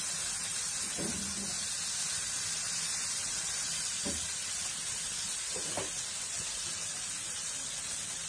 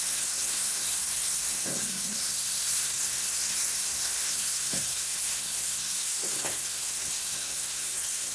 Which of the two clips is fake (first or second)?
second